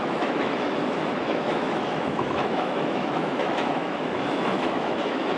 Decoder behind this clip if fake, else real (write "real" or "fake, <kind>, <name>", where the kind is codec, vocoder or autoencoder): fake, autoencoder, DAC-VAE